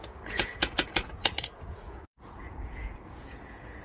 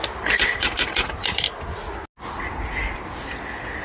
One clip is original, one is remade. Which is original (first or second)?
second